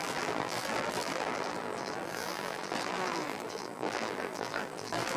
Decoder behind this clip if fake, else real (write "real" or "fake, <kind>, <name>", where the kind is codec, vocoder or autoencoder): fake, vocoder, BigVGAN v2